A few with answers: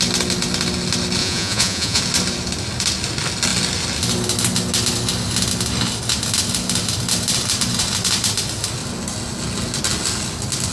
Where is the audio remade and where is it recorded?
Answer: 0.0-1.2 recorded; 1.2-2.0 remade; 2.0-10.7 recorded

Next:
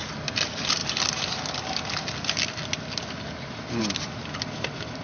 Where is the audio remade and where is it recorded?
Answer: 0.0-5.0 recorded

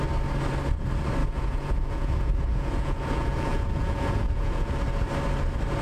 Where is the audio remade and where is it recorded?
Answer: 0.0-1.2 recorded; 1.2-4.7 remade; 4.7-5.8 recorded

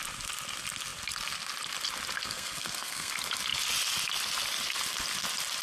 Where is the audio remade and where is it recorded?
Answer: 0.0-2.2 recorded; 2.2-3.1 remade; 3.1-5.6 recorded

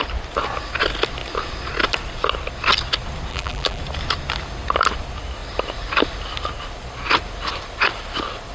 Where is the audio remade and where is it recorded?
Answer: 0.0-3.3 recorded; 3.3-3.8 remade; 3.8-8.5 recorded

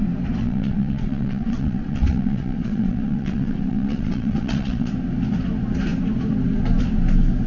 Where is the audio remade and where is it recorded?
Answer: 0.0-0.4 recorded; 0.4-4.9 remade; 4.9-7.5 recorded

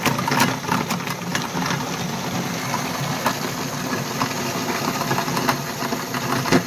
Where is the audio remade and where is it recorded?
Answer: 0.0-6.7 recorded